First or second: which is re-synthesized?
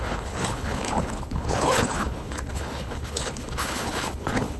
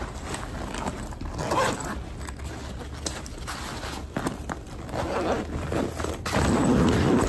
first